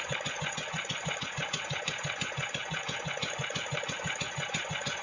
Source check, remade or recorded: remade